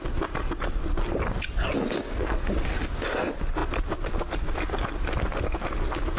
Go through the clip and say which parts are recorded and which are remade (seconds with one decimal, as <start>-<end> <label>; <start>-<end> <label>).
0.0-6.2 recorded